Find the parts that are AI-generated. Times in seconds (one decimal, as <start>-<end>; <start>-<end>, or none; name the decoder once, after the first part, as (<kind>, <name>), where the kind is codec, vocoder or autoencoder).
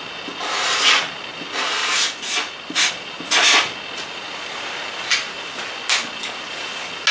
none